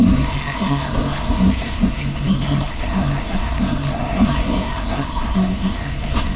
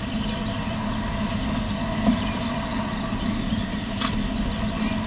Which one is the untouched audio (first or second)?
second